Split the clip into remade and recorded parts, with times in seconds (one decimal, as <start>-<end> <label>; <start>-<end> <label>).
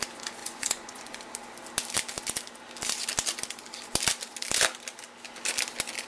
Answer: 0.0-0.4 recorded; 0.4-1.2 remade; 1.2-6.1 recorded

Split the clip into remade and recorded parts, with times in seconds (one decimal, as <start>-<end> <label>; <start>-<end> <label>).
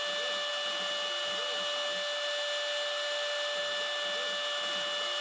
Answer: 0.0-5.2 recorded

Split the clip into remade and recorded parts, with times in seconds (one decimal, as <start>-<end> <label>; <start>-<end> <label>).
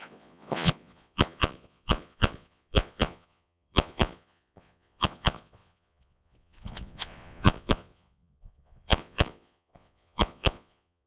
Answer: 0.0-11.1 remade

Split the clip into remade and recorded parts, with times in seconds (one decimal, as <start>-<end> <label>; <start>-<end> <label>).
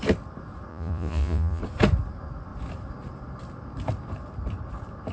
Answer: 0.0-0.7 recorded; 0.7-1.6 remade; 1.6-5.1 recorded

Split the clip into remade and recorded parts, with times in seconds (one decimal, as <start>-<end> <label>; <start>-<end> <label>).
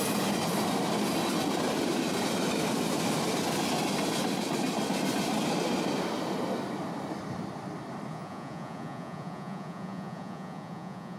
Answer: 0.0-8.1 recorded; 8.1-11.2 remade